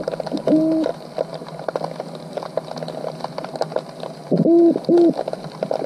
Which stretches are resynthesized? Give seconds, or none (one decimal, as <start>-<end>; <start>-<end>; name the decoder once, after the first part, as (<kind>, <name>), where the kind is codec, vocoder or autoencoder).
0.9-1.7 (vocoder, BigVGAN v2)